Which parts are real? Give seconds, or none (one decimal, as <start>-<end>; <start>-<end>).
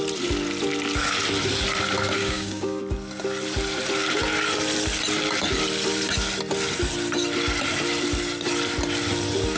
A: 0.0-2.2; 2.8-9.6